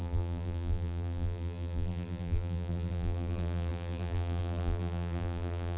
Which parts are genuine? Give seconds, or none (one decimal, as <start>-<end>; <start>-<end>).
none